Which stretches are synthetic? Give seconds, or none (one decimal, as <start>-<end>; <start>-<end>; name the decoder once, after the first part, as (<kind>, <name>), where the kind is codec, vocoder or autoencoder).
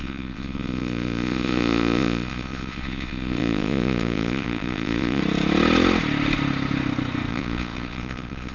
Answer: 0.0-5.2 (vocoder, Vocos); 7.3-8.5